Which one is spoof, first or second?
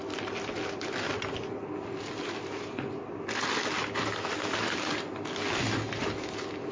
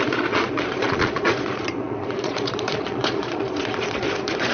second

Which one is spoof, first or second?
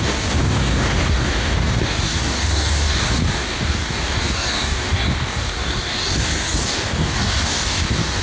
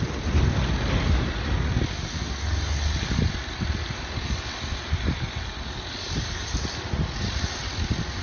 first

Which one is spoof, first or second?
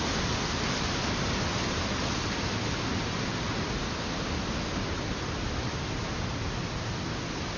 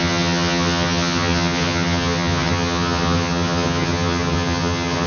second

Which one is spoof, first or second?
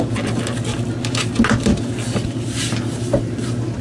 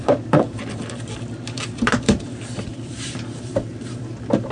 second